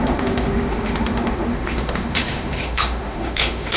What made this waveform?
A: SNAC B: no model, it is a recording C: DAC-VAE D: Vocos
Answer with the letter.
C